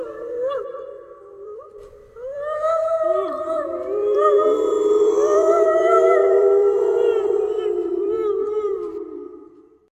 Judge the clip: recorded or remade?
remade